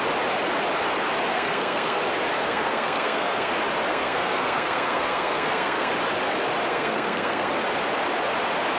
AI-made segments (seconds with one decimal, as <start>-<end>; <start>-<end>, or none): 1.3-2.0; 2.4-3.5; 3.9-5.9; 6.7-7.5